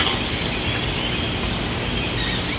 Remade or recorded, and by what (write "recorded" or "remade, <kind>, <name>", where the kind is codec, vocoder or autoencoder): recorded